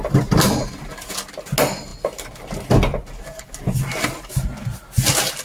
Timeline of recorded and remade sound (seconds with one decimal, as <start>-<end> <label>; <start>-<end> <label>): 0.0-5.4 recorded